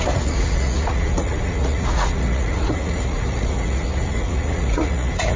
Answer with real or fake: fake